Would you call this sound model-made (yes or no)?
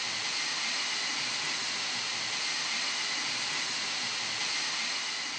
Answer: no